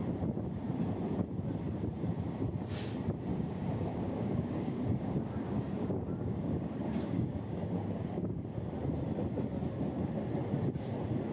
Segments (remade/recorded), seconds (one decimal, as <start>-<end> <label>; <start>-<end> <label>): 0.0-3.3 recorded; 3.3-8.4 remade; 8.4-11.3 recorded